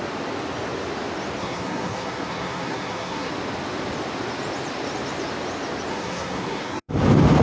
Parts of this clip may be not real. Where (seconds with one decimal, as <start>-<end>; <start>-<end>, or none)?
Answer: 1.4-3.3; 5.9-6.9